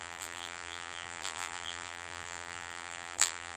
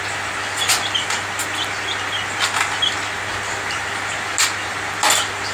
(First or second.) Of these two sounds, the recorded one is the second